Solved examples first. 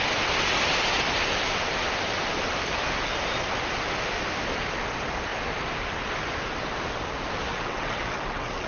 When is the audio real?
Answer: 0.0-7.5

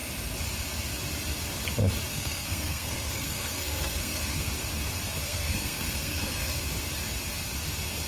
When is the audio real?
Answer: 0.0-2.1; 4.5-5.2; 6.6-8.1

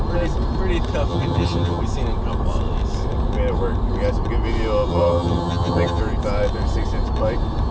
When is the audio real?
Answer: 0.0-1.1; 1.8-4.9; 6.0-7.7

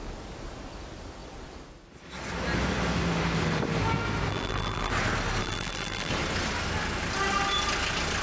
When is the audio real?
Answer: 0.0-4.3; 4.9-5.4; 6.1-8.2

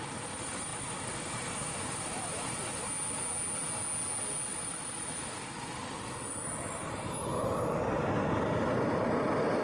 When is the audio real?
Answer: 0.0-0.7; 1.3-4.5; 9.0-9.6